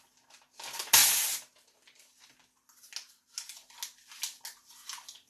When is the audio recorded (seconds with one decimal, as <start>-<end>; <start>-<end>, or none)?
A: 0.0-5.3